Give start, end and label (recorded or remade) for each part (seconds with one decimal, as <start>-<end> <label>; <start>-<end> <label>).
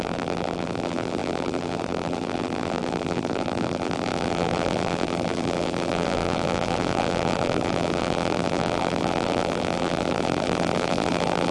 0.0-11.5 remade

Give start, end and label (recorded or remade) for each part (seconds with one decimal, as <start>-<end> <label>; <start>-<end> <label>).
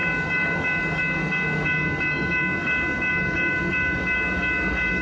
0.0-5.0 remade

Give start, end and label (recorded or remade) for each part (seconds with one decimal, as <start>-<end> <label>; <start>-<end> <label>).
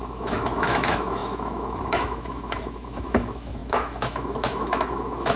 0.0-5.4 remade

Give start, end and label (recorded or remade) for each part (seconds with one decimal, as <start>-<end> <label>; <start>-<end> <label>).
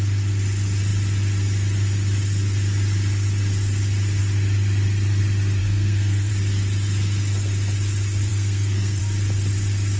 0.0-5.6 recorded; 5.6-6.3 remade; 6.3-8.3 recorded; 8.3-9.0 remade; 9.0-10.0 recorded